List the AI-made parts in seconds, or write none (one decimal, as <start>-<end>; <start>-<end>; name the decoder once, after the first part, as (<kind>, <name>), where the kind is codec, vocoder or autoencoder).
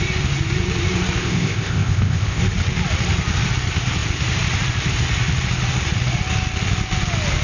1.2-2.4 (codec, ZipCodec)